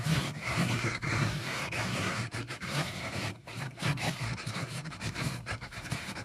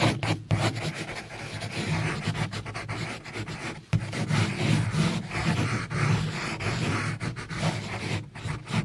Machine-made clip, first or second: first